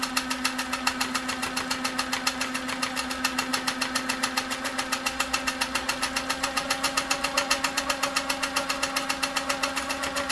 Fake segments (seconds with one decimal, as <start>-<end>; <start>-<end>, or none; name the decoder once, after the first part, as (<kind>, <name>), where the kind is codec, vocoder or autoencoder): none